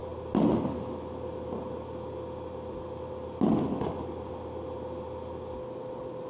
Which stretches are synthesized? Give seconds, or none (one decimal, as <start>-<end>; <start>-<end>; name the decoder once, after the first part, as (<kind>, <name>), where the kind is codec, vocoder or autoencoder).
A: none

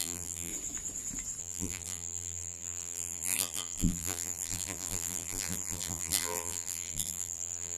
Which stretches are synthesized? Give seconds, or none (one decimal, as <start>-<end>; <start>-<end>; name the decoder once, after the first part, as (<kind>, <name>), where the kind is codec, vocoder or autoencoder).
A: 0.0-0.5 (vocoder, BigVGAN v2); 1.4-7.8

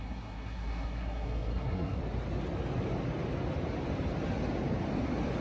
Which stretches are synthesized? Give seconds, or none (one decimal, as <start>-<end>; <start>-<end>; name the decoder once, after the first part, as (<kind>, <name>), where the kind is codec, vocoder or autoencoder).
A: 0.0-2.0 (codec, SNAC)

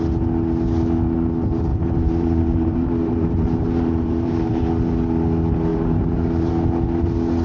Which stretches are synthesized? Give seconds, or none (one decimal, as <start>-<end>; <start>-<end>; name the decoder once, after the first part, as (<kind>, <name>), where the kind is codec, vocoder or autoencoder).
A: 1.7-4.6 (vocoder, BigVGAN v2); 5.7-6.5